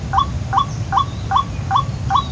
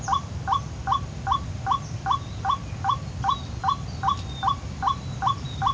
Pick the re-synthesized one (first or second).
second